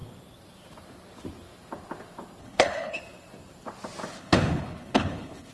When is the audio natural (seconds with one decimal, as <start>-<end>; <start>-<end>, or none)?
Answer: 0.0-2.4; 3.0-4.1